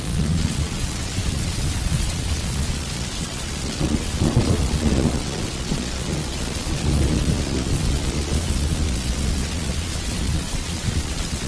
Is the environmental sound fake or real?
fake